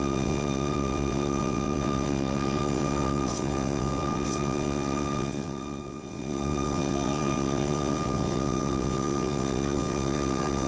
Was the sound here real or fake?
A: fake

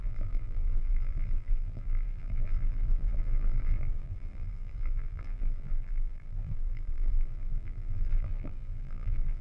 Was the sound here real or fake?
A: fake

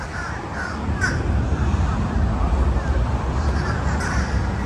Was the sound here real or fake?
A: real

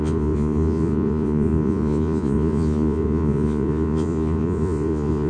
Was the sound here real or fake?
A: fake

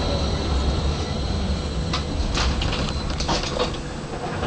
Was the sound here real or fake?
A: real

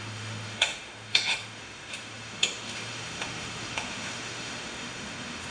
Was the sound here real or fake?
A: fake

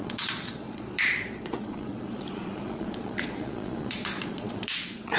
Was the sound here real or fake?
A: fake